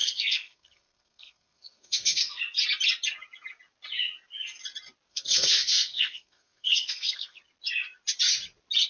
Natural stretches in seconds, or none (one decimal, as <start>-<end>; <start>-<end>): 2.4-5.1; 7.4-8.9